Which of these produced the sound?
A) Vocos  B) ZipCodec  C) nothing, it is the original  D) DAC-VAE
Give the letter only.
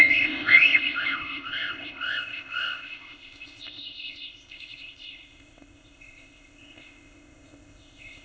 B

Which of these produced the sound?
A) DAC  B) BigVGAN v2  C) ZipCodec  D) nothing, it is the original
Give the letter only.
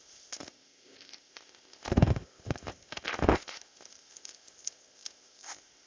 C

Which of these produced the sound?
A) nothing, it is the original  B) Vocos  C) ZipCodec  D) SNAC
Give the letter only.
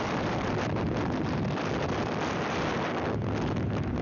A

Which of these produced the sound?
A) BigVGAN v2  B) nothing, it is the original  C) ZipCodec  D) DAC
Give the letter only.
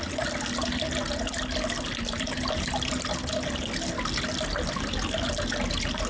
B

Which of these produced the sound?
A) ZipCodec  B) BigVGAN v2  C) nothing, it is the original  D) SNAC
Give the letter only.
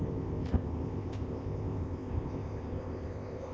A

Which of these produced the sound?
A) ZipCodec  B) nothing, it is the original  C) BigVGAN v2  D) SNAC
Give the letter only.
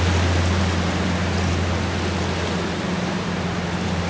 B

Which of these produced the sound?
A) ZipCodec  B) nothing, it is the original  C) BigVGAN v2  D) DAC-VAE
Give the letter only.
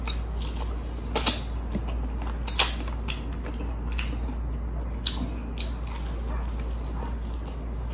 B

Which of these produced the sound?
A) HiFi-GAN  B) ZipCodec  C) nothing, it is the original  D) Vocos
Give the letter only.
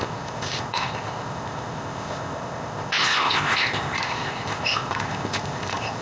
B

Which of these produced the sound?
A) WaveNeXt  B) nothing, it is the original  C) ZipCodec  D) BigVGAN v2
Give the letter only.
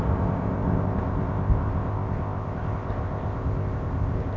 C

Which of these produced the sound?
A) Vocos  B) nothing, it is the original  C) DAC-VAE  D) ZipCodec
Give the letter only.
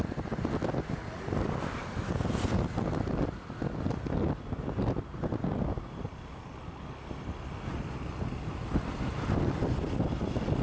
B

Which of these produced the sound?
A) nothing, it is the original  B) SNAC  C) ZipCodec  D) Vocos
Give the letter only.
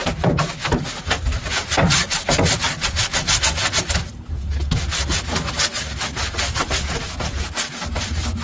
A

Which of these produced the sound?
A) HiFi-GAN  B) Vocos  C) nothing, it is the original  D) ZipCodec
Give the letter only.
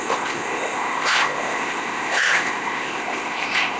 D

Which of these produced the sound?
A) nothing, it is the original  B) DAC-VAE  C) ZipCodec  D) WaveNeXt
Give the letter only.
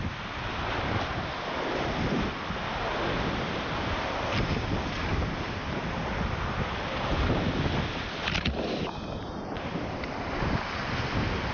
A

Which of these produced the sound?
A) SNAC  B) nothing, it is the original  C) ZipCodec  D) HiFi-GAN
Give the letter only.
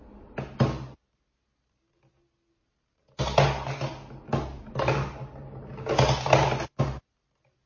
B